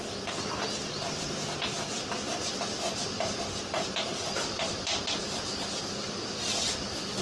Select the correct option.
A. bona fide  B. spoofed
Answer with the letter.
B